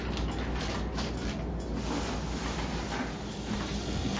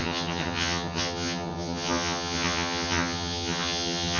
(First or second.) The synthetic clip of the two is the second